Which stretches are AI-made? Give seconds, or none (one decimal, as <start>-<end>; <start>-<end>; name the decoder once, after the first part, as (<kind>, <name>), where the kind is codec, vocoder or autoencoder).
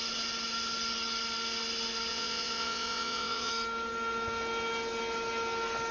2.1-3.5 (vocoder, WaveNeXt)